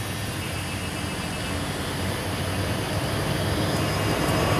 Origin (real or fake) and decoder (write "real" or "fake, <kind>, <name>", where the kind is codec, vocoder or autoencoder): real